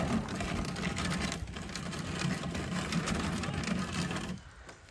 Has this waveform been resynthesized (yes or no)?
yes